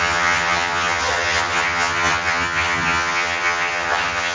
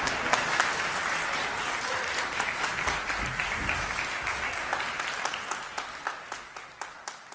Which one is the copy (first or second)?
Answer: first